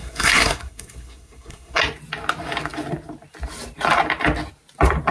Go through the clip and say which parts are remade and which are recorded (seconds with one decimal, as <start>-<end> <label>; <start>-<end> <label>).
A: 0.0-1.8 remade; 1.8-5.1 recorded